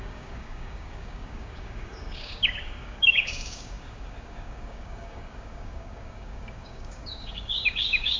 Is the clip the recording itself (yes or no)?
no